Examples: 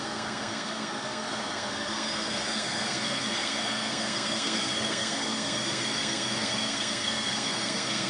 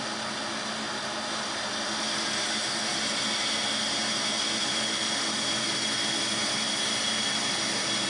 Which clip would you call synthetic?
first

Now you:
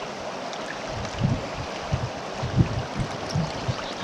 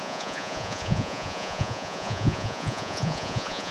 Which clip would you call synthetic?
second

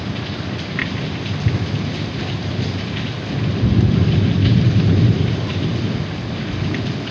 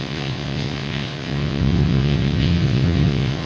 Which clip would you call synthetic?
second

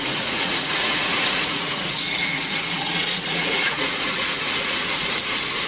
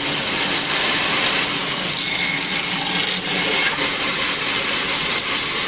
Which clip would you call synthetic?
first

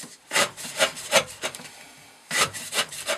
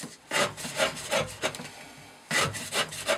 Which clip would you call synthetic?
first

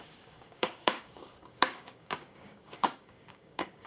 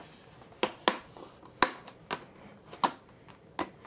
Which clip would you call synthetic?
first